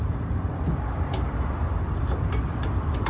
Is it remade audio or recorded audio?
remade